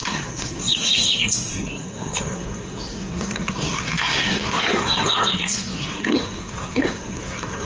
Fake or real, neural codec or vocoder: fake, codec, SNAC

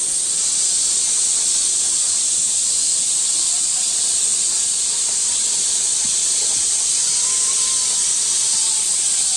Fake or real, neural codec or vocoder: real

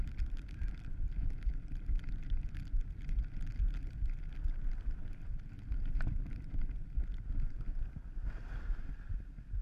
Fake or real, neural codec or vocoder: real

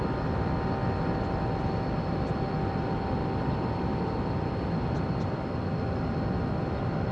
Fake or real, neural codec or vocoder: real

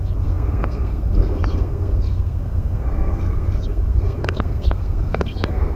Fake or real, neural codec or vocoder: fake, codec, SNAC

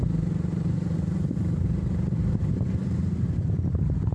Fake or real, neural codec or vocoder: fake, vocoder, BigVGAN v2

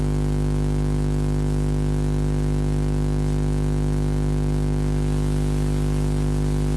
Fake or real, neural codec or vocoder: real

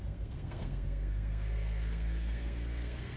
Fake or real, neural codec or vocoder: fake, codec, SNAC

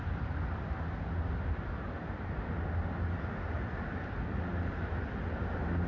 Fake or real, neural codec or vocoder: real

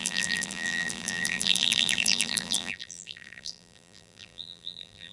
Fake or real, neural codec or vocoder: fake, vocoder, BigVGAN v2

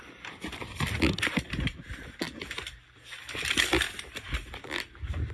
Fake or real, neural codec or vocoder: real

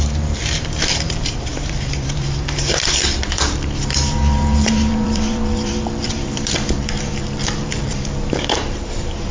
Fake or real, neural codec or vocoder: fake, vocoder, BigVGAN v2